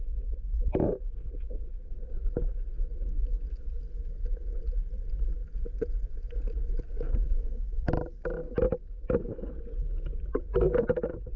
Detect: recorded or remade recorded